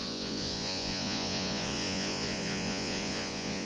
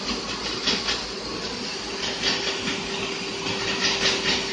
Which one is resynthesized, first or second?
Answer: first